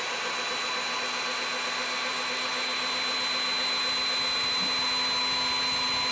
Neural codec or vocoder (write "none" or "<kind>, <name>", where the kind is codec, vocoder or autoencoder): none